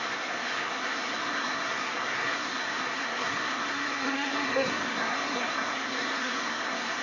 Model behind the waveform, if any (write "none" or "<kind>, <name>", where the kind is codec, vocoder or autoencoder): codec, SNAC